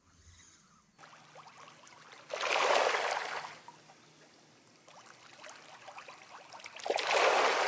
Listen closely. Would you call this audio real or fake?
real